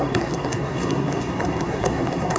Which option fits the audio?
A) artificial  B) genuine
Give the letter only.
A